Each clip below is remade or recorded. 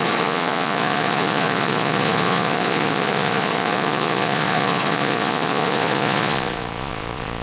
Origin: remade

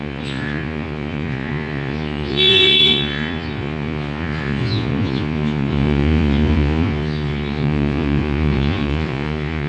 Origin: remade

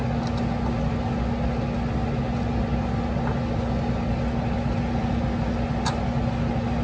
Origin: recorded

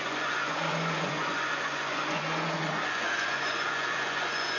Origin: remade